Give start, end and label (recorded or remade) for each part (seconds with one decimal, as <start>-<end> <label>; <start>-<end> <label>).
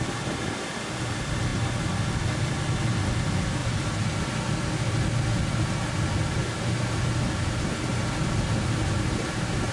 0.0-9.7 recorded